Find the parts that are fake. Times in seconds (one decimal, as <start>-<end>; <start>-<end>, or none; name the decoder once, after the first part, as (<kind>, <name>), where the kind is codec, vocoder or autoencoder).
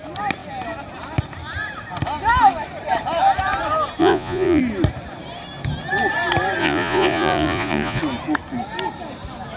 4.0-4.6 (vocoder, Vocos); 6.6-8.0